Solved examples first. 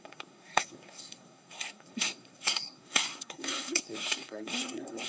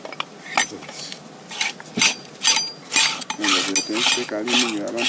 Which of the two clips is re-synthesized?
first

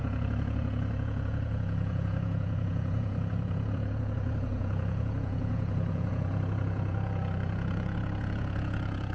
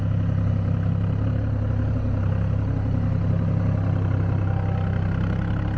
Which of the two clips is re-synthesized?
first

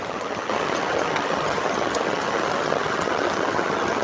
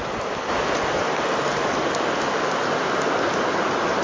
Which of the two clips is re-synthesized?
first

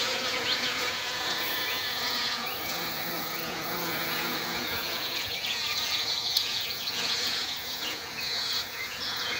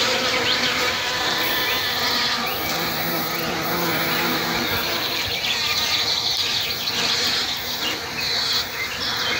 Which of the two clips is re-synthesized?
first